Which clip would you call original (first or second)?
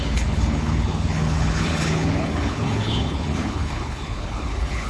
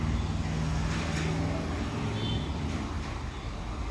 second